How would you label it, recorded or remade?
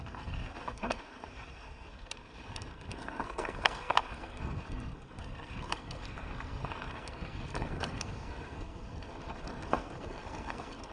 remade